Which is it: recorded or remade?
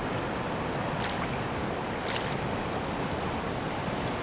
recorded